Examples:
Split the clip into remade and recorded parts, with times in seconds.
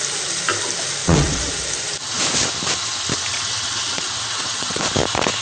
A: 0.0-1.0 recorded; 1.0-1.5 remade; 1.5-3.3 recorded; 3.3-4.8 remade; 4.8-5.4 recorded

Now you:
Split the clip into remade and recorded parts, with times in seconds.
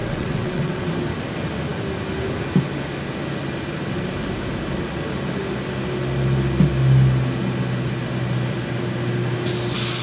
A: 0.0-0.9 remade; 0.9-10.0 recorded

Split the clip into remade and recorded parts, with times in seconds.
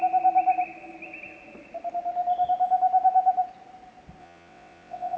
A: 0.0-4.2 recorded; 4.2-5.2 remade